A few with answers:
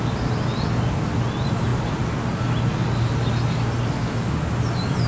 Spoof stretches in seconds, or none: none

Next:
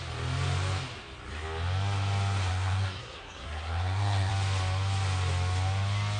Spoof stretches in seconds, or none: 2.5-4.3 (codec, SNAC)

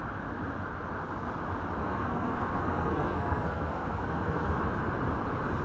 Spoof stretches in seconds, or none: 1.8-4.6 (codec, SNAC)

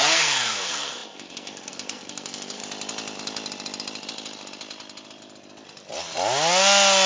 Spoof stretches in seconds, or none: 0.0-2.6 (codec, SNAC)

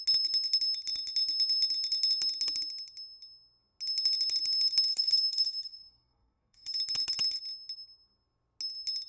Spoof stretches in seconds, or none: 4.9-6.8 (codec, SNAC)

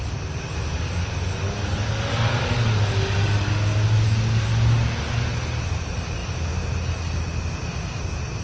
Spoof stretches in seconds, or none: none

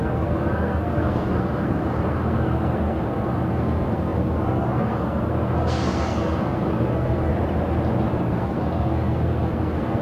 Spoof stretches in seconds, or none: 0.0-7.3 (codec, SNAC); 8.1-10.0